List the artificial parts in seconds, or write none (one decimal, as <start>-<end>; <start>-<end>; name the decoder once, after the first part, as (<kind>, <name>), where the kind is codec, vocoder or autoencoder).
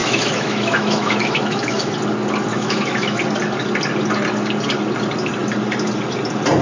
0.0-1.9 (autoencoder, DAC-VAE); 2.5-3.2